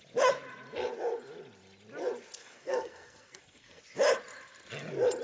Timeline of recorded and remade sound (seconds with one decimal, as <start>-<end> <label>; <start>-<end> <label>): 0.0-2.4 recorded; 2.4-3.8 remade; 3.8-5.2 recorded